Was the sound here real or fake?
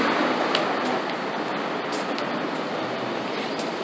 real